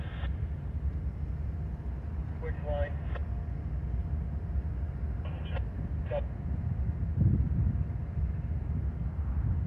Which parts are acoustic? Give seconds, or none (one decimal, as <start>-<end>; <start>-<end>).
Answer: 0.0-9.7